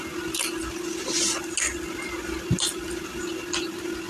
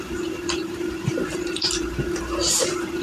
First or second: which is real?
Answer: first